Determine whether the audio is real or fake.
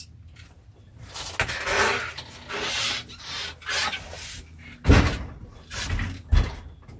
real